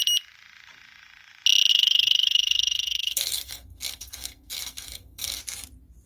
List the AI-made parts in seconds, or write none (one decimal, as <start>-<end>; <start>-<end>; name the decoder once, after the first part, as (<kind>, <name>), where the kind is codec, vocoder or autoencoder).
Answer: 1.7-5.4 (codec, SNAC)